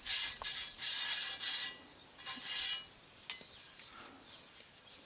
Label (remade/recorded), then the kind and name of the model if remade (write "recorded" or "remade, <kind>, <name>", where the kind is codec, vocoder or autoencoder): recorded